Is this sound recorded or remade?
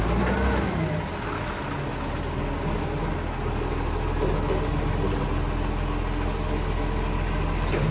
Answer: recorded